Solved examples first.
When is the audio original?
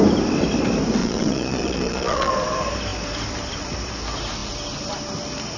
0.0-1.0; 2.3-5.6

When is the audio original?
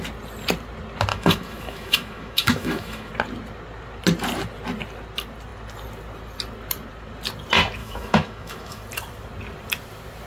0.0-1.1; 3.1-7.8; 8.8-10.3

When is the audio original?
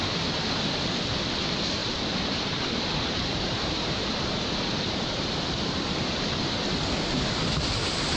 0.0-1.8; 5.8-8.2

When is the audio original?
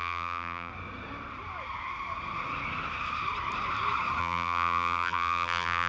0.7-4.2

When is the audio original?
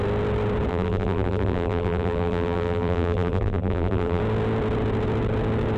0.0-0.7; 4.2-5.8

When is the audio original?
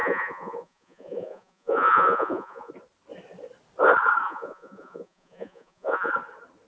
2.7-4.2; 6.1-6.7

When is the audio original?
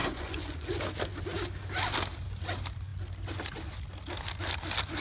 0.8-5.0